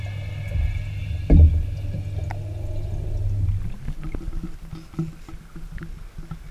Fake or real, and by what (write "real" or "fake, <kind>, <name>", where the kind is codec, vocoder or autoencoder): real